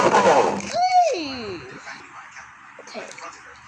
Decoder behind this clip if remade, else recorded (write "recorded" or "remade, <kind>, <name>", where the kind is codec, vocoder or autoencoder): recorded